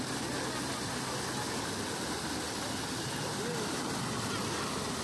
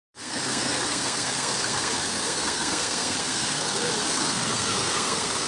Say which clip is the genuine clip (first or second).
first